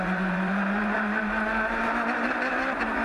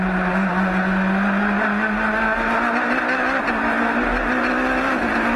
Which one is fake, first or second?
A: first